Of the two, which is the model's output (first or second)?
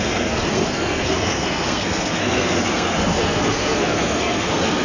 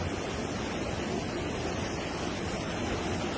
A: first